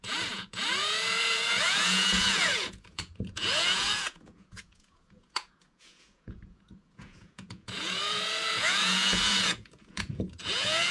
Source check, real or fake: fake